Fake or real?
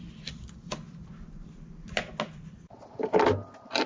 real